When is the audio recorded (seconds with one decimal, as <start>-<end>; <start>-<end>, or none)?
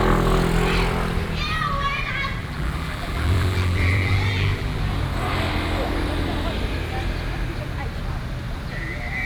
0.0-2.4; 4.8-9.2